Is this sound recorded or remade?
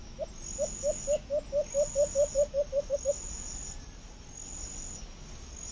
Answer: recorded